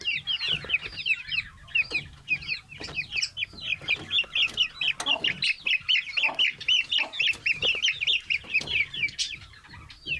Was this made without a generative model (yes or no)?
yes